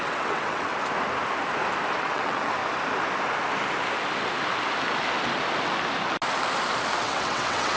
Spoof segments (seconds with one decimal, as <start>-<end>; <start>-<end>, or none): 0.0-0.7; 2.0-2.6; 7.0-7.8